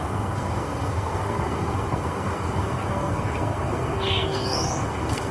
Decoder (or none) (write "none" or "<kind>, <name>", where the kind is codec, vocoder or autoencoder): codec, SNAC